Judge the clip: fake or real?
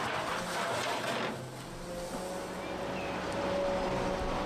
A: real